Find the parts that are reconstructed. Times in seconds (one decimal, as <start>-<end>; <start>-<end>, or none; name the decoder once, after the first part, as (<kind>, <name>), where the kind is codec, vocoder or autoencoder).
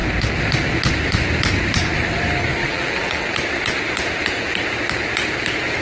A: 2.6-3.2 (vocoder, BigVGAN v2)